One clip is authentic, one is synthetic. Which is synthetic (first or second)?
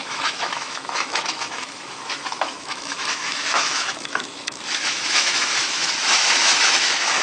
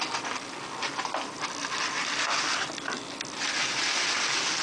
first